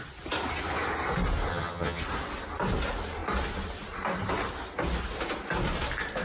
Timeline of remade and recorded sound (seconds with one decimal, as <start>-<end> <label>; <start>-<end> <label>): 0.0-1.5 recorded; 1.5-2.0 remade; 2.0-6.2 recorded

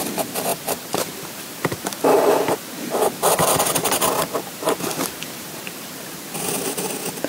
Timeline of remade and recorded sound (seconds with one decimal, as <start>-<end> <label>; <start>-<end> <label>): 0.0-7.3 recorded

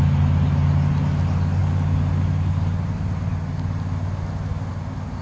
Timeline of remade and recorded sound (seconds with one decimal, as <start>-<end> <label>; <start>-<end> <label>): 0.0-5.2 recorded

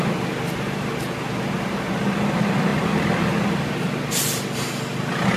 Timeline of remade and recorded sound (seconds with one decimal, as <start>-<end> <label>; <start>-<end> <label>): 0.0-5.4 recorded

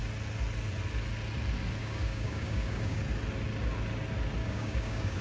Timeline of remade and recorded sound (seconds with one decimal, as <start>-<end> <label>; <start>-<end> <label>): 0.0-1.8 recorded; 1.8-3.0 remade; 3.0-4.4 recorded; 4.4-5.2 remade

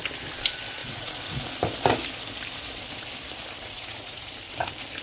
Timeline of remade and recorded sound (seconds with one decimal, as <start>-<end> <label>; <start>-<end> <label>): 0.0-0.8 recorded; 0.8-1.5 remade; 1.5-3.6 recorded; 3.6-4.3 remade; 4.3-5.0 recorded

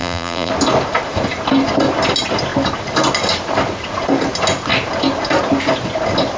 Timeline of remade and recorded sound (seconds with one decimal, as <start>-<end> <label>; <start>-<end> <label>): 0.0-0.5 remade; 0.5-6.4 recorded